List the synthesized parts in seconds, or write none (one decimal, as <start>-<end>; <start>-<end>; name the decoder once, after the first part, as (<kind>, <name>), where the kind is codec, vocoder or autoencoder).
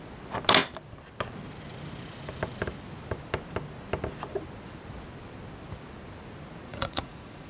6.7-7.5 (vocoder, Vocos)